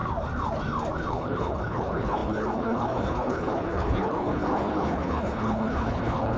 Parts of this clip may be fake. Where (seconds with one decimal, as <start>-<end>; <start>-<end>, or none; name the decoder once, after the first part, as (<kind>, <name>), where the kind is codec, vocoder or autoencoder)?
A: 1.1-6.4 (codec, HILCodec)